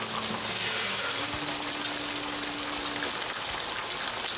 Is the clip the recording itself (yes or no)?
yes